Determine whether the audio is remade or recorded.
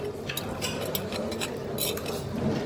recorded